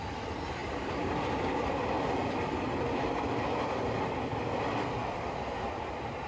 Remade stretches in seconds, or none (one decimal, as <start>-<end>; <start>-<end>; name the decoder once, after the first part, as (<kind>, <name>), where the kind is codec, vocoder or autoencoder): none